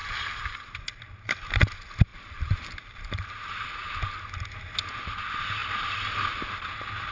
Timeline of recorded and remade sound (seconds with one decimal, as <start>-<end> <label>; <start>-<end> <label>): 0.0-0.6 remade; 0.6-2.1 recorded; 2.1-3.9 remade; 3.9-7.1 recorded